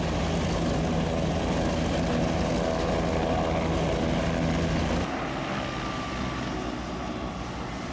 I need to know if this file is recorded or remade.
recorded